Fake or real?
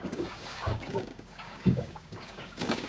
fake